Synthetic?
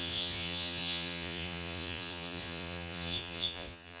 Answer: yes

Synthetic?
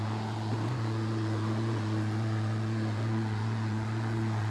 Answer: yes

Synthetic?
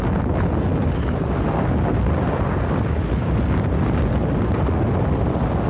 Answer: no